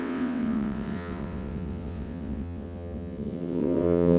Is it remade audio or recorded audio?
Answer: remade